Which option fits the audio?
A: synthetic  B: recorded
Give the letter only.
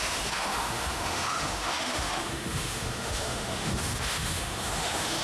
A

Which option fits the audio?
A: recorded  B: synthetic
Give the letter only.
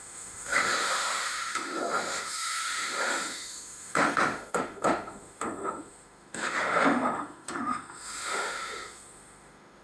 B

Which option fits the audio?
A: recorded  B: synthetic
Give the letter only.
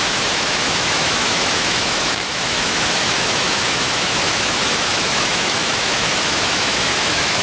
B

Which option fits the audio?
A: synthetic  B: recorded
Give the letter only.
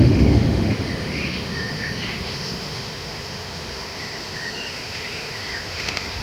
A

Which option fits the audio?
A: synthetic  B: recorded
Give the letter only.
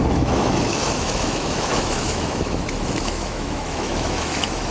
A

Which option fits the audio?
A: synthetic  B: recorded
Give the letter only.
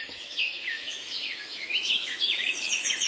A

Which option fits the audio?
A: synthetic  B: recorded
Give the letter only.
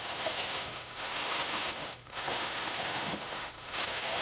A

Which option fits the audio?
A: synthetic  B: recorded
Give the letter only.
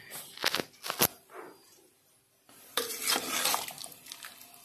B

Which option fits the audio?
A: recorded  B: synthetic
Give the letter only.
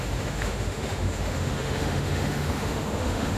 B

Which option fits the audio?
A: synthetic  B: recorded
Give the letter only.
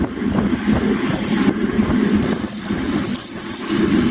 B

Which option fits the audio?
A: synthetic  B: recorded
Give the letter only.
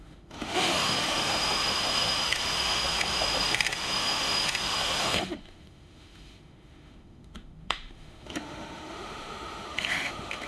A